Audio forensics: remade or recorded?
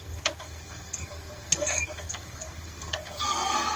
remade